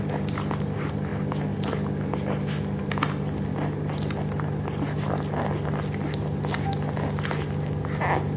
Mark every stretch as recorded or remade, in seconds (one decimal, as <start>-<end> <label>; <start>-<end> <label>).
0.0-8.4 recorded